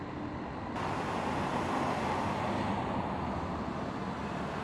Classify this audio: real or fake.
real